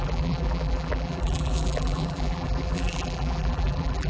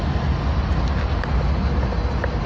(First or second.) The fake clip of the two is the first